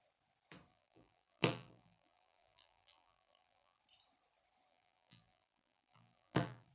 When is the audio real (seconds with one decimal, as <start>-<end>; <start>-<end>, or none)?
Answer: 0.0-0.7; 3.8-4.7